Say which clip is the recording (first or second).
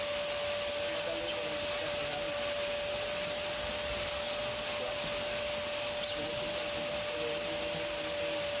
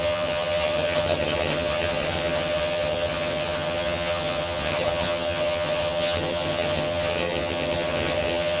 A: first